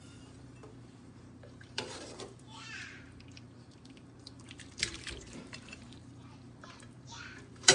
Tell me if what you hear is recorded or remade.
remade